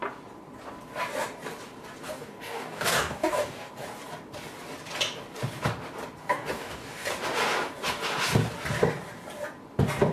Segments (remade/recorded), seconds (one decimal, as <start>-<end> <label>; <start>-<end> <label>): 0.0-2.0 recorded; 2.0-3.7 remade; 3.7-6.2 recorded; 6.2-7.1 remade; 7.1-10.1 recorded